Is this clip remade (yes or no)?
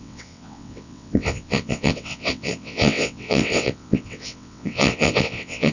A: yes